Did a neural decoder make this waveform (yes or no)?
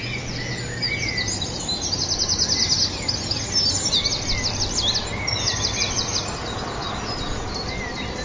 no